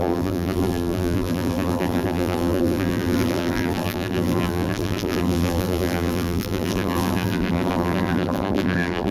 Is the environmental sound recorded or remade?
remade